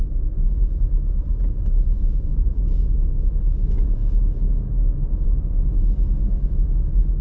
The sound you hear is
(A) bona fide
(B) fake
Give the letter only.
B